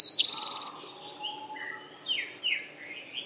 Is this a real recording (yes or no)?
yes